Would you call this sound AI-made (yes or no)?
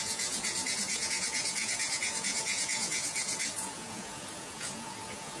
yes